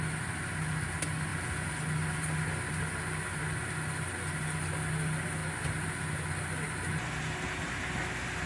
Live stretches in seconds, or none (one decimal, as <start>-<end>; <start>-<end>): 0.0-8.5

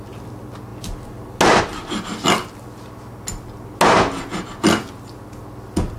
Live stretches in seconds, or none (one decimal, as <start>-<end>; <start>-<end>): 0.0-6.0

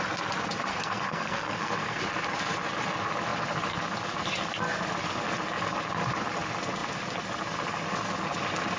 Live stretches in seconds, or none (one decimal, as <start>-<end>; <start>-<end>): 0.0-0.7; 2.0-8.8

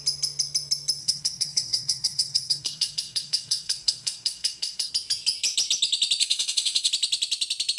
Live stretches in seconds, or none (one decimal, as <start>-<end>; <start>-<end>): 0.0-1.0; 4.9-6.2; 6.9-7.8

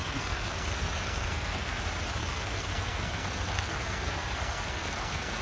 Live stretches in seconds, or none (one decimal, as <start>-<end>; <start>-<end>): 1.8-2.2

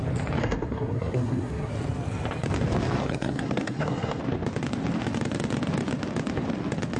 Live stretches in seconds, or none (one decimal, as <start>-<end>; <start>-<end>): 0.0-0.4; 1.7-3.0; 4.2-7.0

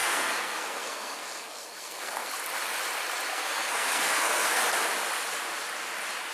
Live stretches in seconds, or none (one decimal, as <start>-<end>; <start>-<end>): 2.3-3.3; 4.6-6.3